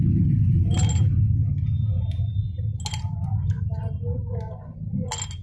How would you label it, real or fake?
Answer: real